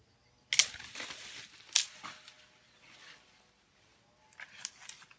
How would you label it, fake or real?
real